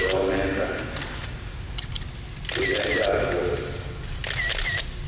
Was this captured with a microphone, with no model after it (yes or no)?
yes